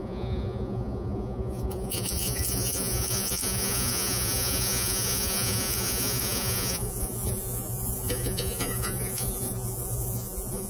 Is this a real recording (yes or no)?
no